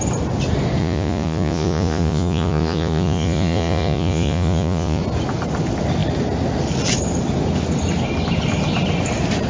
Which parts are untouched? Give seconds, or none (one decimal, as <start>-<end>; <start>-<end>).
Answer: 0.0-0.8; 5.0-9.5